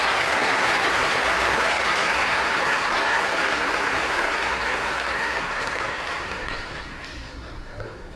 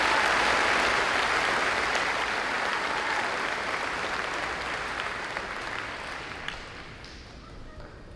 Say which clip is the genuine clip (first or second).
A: second